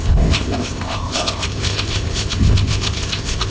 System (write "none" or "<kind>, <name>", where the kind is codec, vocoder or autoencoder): codec, ZipCodec